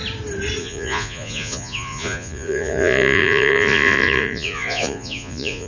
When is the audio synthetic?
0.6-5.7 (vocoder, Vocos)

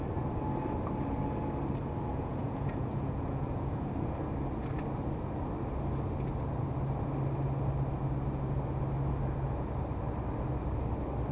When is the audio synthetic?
2.1-3.9 (vocoder, Vocos)